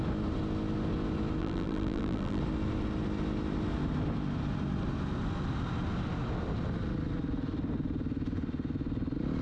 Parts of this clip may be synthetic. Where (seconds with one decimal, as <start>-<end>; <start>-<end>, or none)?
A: 1.4-2.4